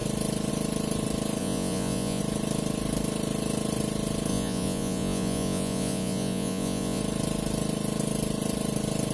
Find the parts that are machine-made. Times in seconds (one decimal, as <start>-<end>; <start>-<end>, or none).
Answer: 1.4-2.2; 4.3-7.0